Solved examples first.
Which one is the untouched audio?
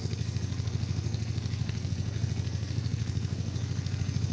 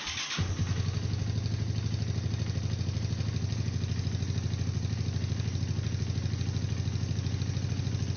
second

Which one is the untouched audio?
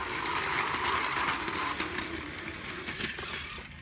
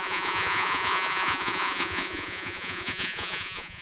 first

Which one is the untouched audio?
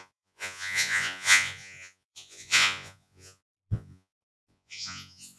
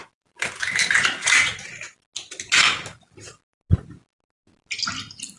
second